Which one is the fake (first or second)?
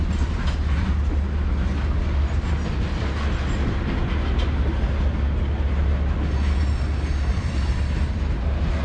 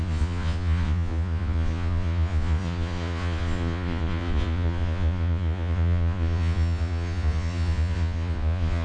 second